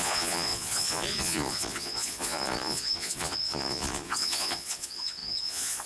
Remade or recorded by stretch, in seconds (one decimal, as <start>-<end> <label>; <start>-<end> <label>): 0.0-5.9 remade